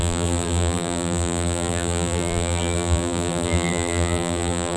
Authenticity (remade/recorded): remade